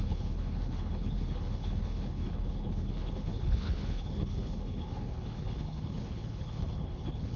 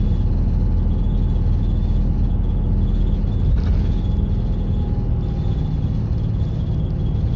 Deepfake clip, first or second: first